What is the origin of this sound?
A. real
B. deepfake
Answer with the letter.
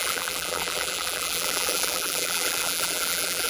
B